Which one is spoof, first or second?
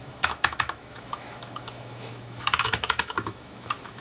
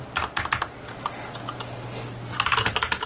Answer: first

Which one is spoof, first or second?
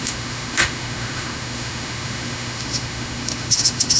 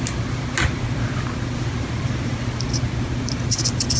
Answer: first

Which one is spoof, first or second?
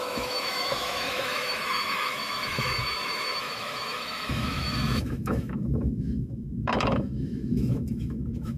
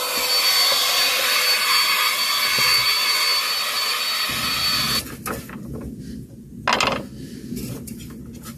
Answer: first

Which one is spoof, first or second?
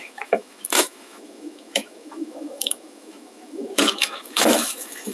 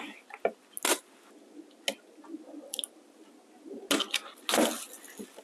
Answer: first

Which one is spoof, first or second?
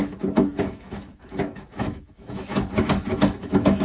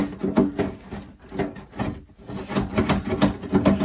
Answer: first